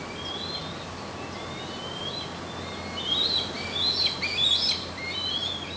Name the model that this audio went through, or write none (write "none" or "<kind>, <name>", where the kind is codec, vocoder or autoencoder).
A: none